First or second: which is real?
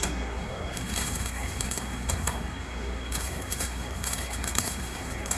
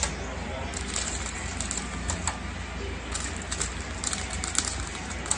second